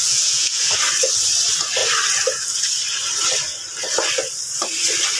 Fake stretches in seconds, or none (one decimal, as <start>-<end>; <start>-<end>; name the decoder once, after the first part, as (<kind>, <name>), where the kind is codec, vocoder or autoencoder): 0.0-0.7 (vocoder, Vocos)